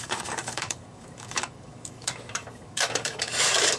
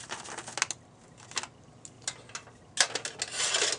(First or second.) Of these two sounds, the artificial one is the first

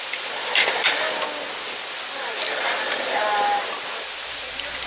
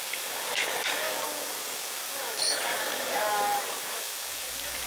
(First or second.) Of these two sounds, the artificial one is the second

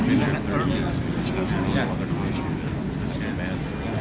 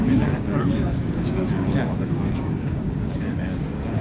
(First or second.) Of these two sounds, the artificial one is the second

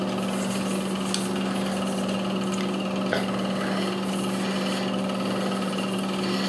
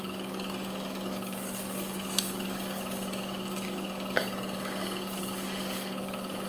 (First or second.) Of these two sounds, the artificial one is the second